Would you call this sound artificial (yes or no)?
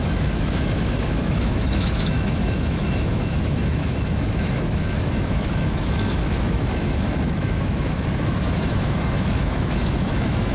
yes